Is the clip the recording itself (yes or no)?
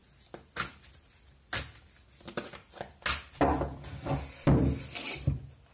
yes